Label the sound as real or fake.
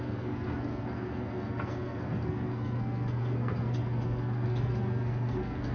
fake